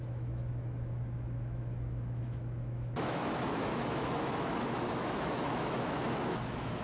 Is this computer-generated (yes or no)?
yes